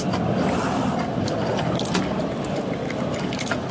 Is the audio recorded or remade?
recorded